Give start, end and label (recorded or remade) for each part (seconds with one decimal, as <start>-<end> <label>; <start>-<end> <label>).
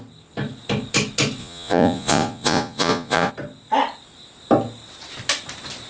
0.0-1.4 recorded; 1.4-3.3 remade; 3.3-5.9 recorded